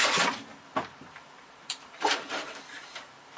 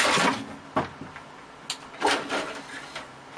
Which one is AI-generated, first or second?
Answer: first